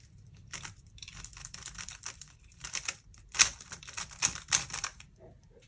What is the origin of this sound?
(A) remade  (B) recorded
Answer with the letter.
A